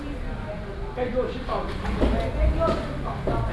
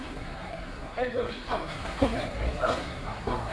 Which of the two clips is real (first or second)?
first